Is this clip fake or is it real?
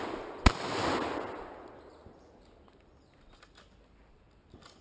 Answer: real